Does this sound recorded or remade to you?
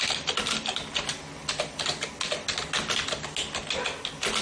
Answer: recorded